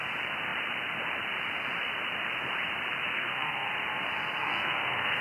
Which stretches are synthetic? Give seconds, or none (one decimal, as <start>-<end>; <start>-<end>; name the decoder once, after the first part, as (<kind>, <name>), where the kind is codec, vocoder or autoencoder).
3.1-3.7 (codec, SNAC); 4.4-5.2